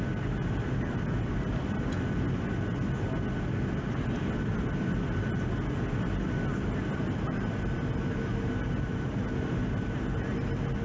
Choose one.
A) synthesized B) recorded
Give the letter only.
B